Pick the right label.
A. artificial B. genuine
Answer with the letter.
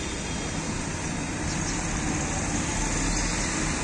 B